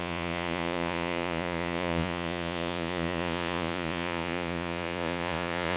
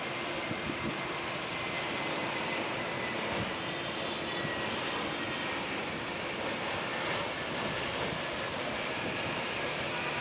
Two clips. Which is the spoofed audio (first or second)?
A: first